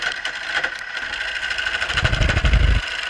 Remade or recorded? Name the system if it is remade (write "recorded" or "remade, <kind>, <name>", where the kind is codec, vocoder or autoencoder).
recorded